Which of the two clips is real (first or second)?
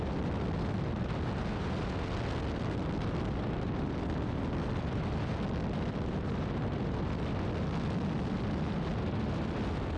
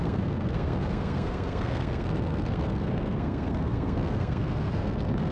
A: first